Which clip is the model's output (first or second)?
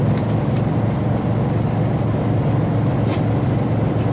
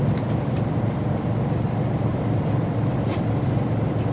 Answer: second